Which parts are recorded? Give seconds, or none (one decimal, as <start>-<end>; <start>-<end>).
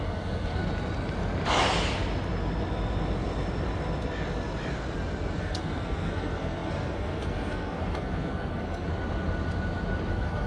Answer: 0.6-5.4; 8.9-10.1